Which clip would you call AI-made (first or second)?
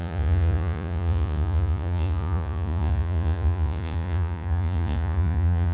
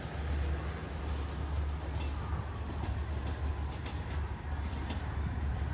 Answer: first